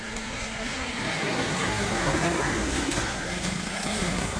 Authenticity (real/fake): fake